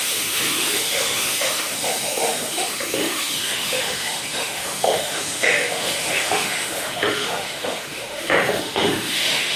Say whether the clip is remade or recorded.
remade